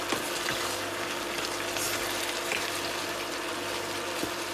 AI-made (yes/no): no